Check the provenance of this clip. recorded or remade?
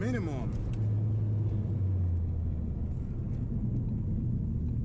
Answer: recorded